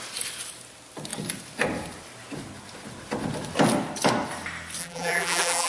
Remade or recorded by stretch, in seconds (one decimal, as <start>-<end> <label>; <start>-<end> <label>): 0.0-4.8 recorded; 4.8-5.7 remade